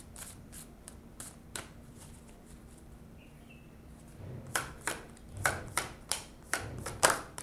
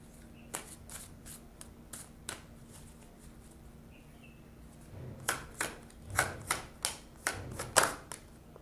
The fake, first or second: first